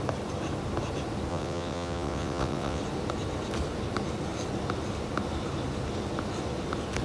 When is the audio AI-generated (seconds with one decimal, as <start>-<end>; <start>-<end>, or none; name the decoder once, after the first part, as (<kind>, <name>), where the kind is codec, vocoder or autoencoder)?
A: 1.3-2.8 (vocoder, WaveNeXt)